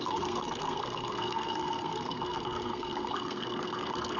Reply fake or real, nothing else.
fake